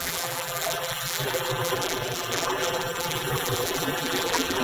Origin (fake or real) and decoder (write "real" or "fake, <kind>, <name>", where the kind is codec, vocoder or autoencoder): fake, vocoder, BigVGAN v2